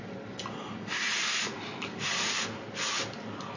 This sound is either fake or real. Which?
real